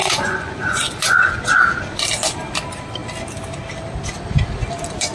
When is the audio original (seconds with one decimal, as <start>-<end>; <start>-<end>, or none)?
1.4-5.1